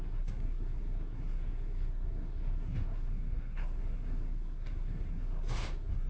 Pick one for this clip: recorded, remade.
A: remade